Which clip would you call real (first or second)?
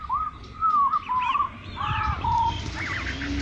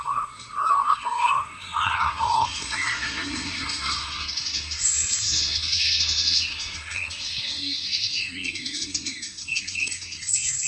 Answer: first